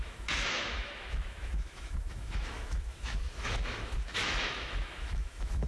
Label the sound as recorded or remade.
remade